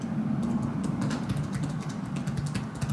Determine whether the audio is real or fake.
real